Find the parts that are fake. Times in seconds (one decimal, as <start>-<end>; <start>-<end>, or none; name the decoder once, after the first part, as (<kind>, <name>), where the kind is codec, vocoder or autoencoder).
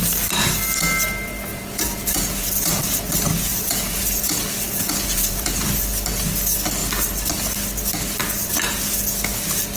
1.5-2.8 (vocoder, Vocos); 3.5-5.7